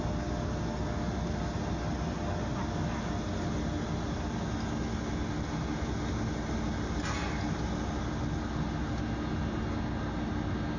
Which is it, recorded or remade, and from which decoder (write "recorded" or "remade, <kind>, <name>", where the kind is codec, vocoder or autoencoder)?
recorded